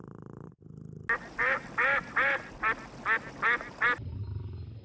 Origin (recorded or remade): recorded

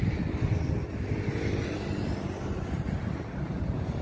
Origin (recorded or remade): recorded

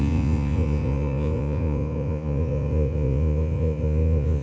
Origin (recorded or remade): remade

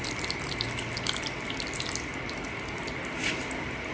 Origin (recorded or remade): recorded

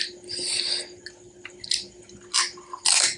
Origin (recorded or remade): recorded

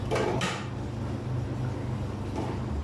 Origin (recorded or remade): recorded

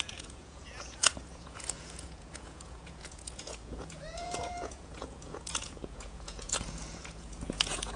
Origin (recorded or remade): remade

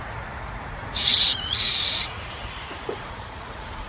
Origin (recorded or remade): remade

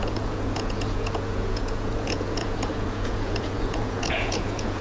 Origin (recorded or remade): remade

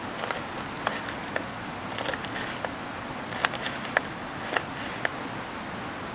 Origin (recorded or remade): recorded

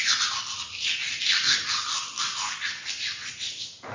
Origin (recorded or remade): recorded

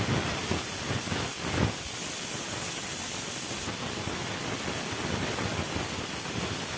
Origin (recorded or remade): recorded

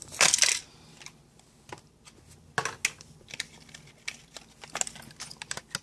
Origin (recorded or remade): recorded